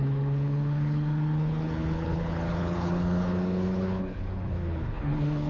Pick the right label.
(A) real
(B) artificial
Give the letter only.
B